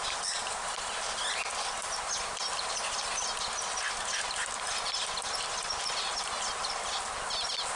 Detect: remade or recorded recorded